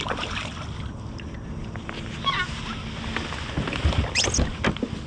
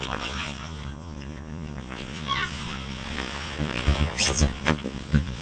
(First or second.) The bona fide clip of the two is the first